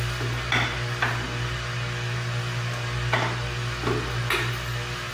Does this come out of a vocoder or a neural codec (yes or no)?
no